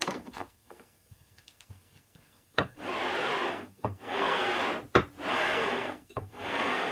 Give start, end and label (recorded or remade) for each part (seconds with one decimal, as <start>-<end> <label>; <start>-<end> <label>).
0.0-2.9 remade; 2.9-3.5 recorded; 3.5-4.6 remade; 4.6-5.3 recorded; 5.3-6.9 remade